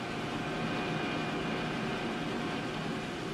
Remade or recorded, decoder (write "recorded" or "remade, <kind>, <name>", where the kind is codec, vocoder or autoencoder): recorded